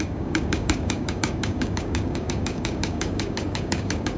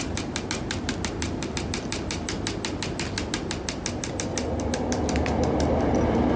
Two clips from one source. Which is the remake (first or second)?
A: first